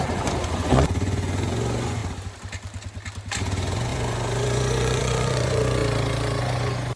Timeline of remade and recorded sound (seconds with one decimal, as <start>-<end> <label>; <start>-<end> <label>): 0.0-2.0 remade; 2.0-3.4 recorded; 3.4-5.8 remade; 5.8-6.4 recorded; 6.4-7.0 remade